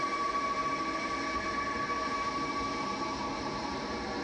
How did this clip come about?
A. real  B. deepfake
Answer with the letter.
B